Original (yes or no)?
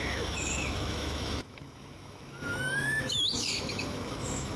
no